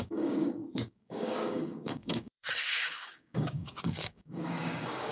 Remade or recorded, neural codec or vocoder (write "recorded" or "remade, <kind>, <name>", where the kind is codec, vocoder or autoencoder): remade, codec, DAC